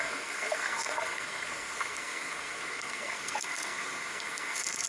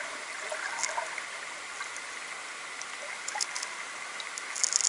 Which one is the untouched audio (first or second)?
second